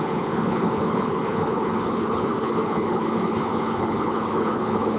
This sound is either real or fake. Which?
fake